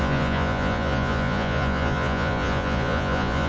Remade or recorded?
remade